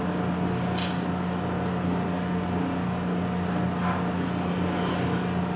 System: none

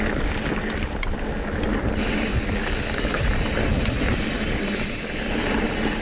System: none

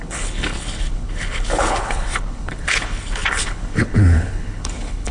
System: codec, HILCodec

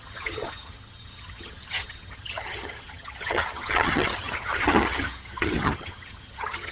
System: vocoder, HiFi-GAN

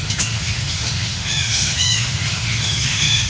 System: autoencoder, DAC-VAE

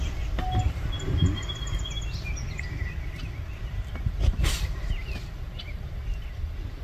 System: none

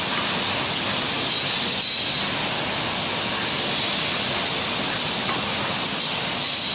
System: none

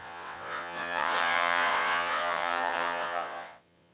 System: vocoder, WaveNeXt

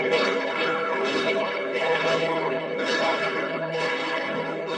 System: codec, HILCodec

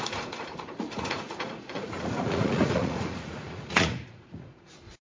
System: vocoder, Vocos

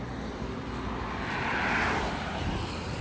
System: none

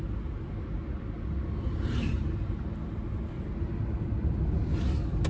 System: none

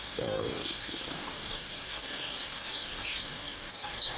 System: codec, DAC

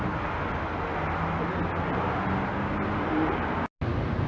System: none